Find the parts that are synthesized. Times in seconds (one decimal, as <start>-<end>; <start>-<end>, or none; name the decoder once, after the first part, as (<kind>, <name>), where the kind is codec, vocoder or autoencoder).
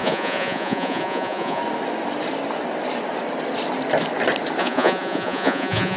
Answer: 0.0-1.6 (vocoder, Vocos); 4.6-6.0